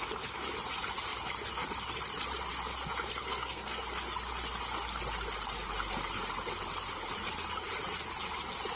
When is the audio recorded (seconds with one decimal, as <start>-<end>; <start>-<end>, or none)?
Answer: 0.0-3.1; 3.8-8.8